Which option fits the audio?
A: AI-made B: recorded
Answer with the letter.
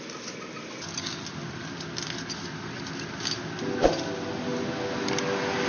B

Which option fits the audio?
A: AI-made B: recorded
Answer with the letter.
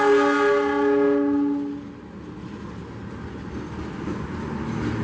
B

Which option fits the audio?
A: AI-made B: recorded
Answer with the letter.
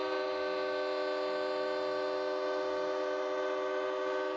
B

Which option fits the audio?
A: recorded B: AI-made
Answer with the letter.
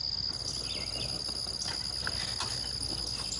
A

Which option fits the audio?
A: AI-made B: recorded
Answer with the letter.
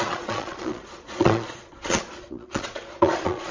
A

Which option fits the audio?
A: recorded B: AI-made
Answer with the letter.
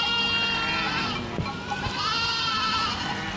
A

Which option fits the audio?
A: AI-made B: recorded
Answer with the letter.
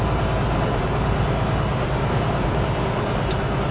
B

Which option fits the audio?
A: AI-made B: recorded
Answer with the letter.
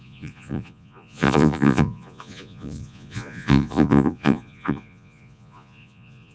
A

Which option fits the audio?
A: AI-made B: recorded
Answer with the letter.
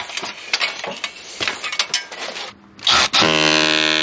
B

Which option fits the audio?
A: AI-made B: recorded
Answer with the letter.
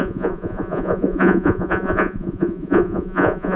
A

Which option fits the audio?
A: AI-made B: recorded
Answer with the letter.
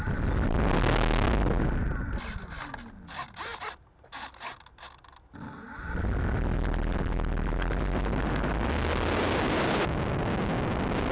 B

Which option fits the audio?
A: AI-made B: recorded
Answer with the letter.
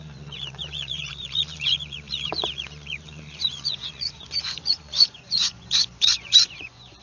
A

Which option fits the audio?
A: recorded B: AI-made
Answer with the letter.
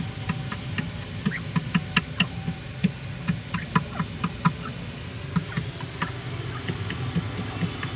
A